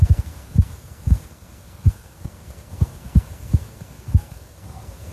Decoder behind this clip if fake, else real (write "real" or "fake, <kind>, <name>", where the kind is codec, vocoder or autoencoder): fake, codec, SNAC